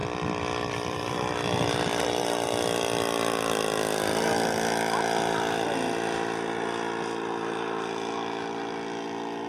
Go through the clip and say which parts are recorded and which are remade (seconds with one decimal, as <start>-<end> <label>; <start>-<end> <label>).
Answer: 0.0-9.5 recorded